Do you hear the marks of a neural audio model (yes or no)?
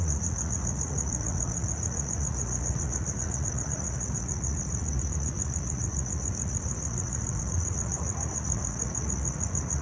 yes